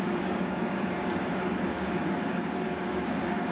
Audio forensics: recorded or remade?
remade